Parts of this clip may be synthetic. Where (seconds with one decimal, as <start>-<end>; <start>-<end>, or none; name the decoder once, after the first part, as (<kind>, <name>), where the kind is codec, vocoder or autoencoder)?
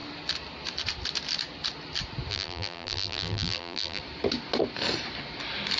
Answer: 2.3-4.0 (vocoder, BigVGAN v2)